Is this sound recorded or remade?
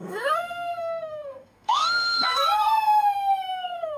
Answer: remade